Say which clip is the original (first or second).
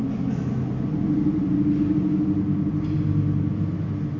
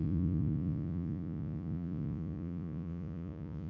first